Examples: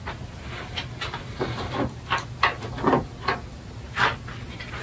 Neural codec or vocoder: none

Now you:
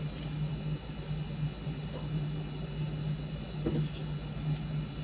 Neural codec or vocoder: none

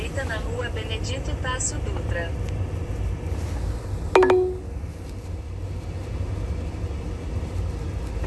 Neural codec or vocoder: none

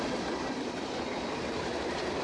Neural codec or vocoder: vocoder, BigVGAN v2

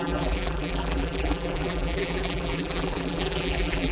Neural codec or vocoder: vocoder, BigVGAN v2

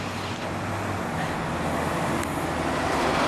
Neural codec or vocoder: none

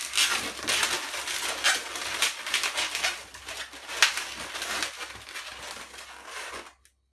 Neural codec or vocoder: none